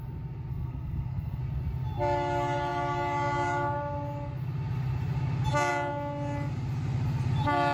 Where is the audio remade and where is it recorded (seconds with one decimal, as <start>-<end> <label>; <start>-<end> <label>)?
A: 0.0-0.5 recorded; 0.5-1.4 remade; 1.4-7.7 recorded